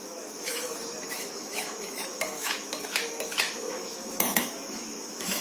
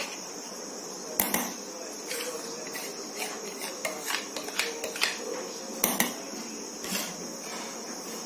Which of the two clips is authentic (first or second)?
second